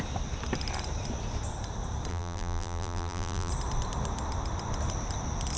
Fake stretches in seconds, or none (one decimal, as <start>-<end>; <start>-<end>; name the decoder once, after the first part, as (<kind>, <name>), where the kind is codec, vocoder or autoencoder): 2.1-3.5 (vocoder, BigVGAN v2)